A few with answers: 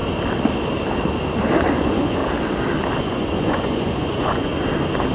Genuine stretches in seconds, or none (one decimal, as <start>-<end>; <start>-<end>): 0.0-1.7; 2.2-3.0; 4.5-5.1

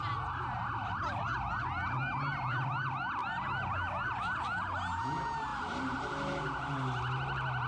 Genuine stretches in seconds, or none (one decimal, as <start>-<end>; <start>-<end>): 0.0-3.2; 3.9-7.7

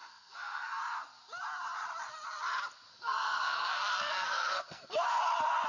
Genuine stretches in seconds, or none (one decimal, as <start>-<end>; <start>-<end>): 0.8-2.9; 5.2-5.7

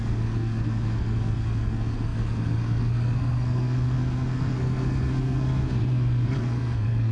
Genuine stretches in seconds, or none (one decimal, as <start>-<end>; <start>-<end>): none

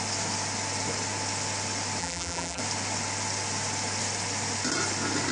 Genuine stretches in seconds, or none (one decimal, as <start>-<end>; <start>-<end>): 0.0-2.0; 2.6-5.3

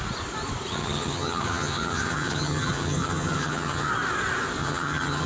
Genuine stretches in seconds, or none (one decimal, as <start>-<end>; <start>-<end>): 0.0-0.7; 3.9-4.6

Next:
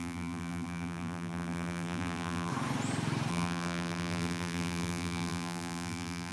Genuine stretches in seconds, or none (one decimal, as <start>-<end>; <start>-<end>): 2.5-3.3